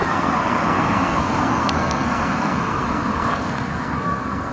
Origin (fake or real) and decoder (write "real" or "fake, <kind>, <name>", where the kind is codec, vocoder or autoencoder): fake, codec, SNAC